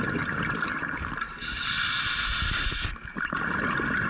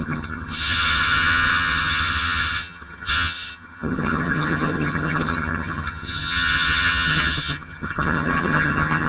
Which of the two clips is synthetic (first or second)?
second